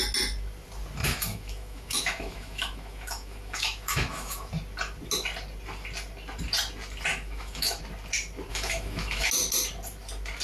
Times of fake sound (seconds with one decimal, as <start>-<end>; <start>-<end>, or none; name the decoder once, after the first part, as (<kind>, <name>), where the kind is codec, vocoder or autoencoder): 1.0-4.5 (autoencoder, DAC-VAE); 7.1-7.8; 8.5-9.3